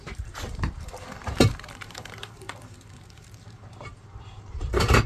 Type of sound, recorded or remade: remade